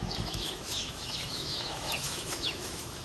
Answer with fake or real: fake